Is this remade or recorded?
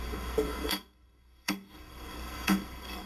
remade